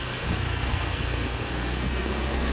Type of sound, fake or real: fake